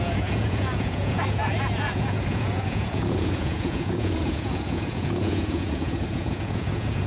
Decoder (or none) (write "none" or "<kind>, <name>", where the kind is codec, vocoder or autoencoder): vocoder, Vocos